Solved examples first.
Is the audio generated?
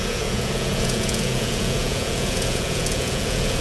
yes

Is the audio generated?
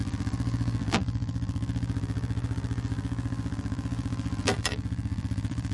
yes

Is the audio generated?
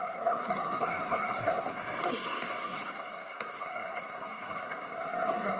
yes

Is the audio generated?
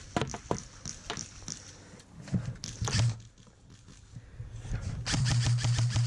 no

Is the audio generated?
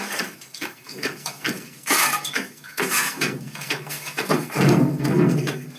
yes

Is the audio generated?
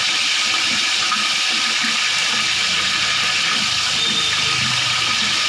no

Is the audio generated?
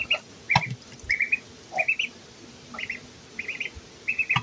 no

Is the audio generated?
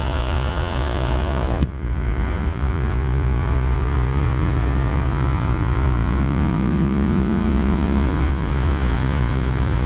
yes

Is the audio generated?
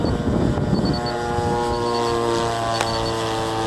no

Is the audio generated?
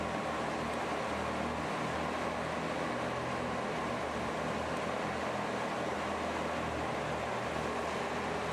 no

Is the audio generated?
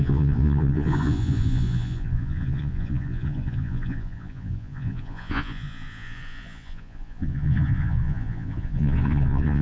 yes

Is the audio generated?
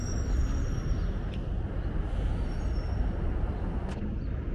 no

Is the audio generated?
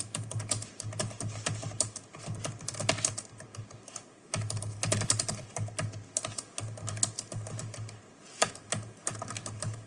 no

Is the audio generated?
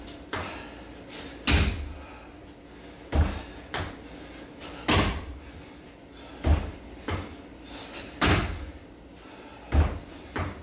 no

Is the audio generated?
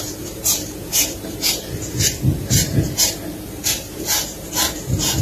yes